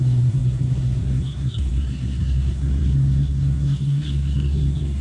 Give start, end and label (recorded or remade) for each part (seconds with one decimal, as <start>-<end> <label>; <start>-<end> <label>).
0.0-5.0 remade